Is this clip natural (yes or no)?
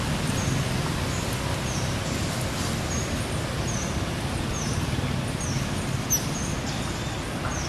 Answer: yes